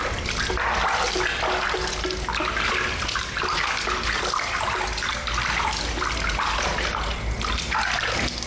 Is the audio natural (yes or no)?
yes